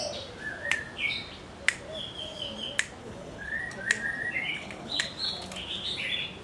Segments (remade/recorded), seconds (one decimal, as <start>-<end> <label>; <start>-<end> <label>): 0.0-3.0 recorded; 3.0-3.6 remade; 3.6-4.5 recorded; 4.5-5.0 remade; 5.0-6.4 recorded